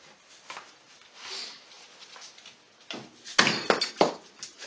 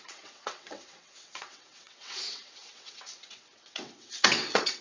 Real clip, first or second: first